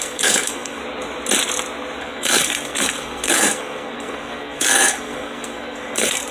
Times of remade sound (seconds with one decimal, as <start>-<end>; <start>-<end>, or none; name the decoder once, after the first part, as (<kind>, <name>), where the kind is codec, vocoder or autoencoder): 0.0-0.8 (codec, SNAC); 2.0-6.3